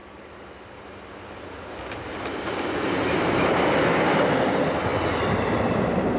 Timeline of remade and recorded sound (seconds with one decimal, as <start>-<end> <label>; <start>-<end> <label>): 0.0-6.2 recorded